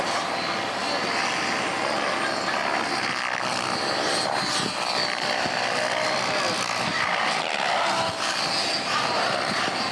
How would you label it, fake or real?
real